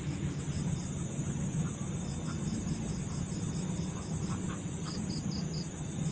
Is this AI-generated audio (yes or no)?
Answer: no